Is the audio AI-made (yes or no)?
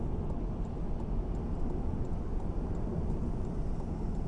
no